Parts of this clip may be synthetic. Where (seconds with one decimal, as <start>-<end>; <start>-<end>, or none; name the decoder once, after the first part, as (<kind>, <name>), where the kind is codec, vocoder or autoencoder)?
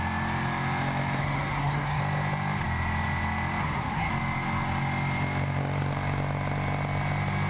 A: 1.2-2.0 (codec, SNAC); 3.6-4.1